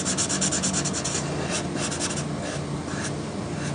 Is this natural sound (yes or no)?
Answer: yes